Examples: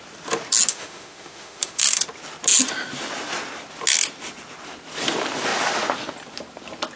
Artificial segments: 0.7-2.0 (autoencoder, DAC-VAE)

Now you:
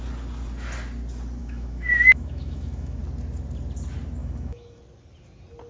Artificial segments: 1.4-3.0 (autoencoder, DAC-VAE); 4.2-4.8

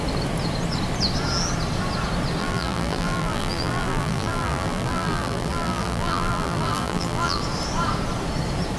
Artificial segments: 2.4-7.4 (vocoder, BigVGAN v2)

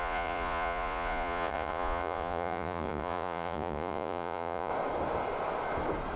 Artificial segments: 0.0-4.7 (vocoder, Vocos)

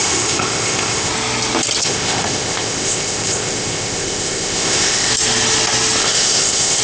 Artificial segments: 0.0-1.1 (codec, ZipCodec); 1.8-5.1; 6.0-6.8